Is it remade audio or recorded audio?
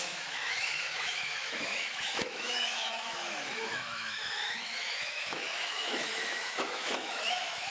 remade